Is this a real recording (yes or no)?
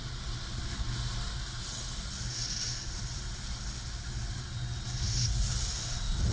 yes